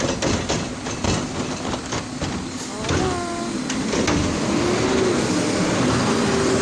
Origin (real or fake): real